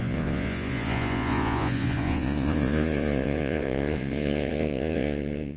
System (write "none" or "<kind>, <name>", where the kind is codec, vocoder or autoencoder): vocoder, Vocos